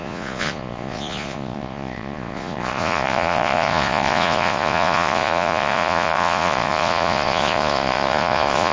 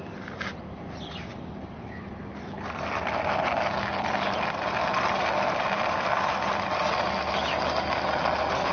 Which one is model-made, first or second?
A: first